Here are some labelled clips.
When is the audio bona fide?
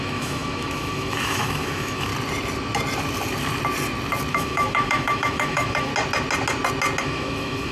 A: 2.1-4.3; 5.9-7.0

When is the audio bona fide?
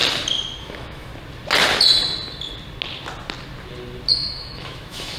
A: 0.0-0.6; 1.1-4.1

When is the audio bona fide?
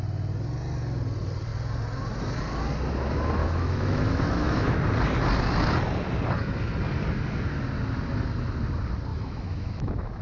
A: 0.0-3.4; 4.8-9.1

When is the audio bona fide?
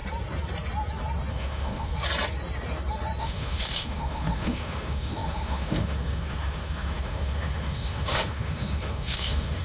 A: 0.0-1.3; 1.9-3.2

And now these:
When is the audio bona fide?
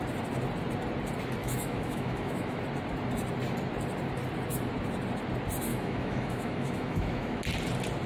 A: 0.0-1.4; 2.6-5.7; 7.4-8.1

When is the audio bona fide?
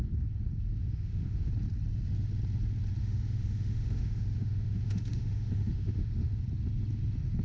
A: 0.0-0.8; 1.5-3.0; 6.4-7.4